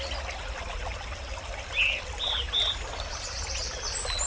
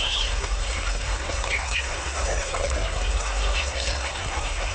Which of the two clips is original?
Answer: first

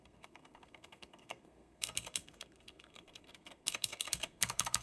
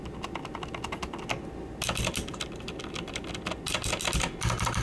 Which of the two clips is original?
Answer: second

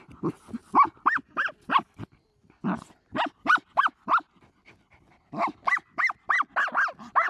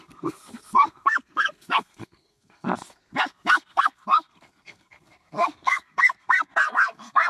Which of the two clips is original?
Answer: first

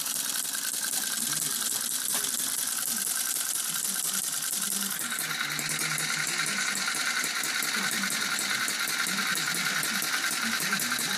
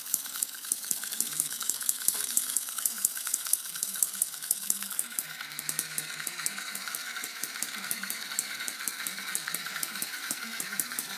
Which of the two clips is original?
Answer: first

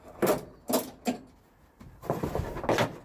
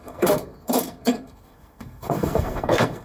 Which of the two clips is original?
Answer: first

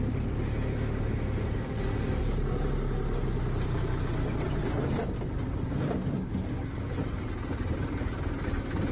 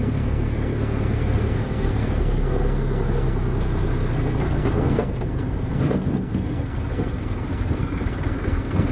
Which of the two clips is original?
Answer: first